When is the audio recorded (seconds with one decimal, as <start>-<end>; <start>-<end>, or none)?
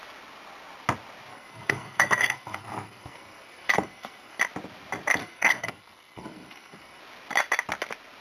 0.0-1.3; 4.4-5.2; 7.0-8.2